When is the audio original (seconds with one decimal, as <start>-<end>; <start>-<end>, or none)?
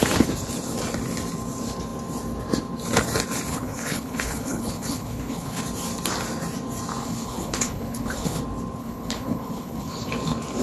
0.0-3.5; 5.6-7.0; 8.4-8.8; 10.1-10.6